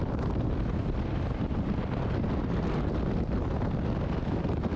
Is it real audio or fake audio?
real